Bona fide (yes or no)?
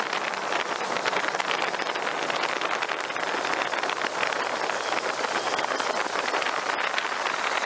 yes